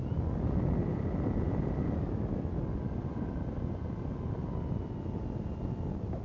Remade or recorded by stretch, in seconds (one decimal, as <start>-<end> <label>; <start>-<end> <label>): 0.0-6.2 recorded

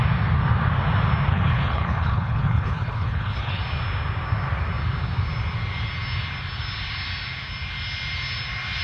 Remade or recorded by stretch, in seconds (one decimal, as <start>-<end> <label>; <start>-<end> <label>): 0.0-1.3 recorded; 1.3-3.6 remade; 3.6-8.8 recorded